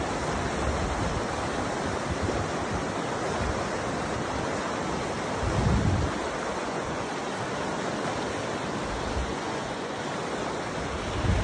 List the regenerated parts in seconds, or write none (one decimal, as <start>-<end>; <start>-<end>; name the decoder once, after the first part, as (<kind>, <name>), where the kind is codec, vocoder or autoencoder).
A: 6.6-7.1 (vocoder, Vocos); 9.2-10.0